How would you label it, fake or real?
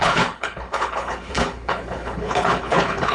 fake